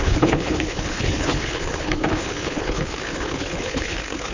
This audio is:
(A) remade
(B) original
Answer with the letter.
A